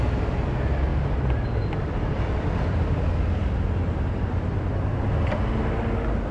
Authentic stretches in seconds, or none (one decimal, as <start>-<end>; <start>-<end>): 0.0-6.3